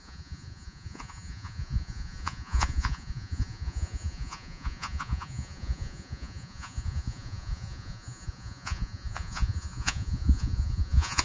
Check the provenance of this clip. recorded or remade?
remade